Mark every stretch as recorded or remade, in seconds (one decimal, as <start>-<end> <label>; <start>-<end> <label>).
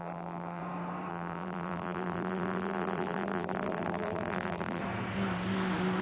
0.0-0.6 remade; 0.6-1.1 recorded; 1.1-4.8 remade; 4.8-6.0 recorded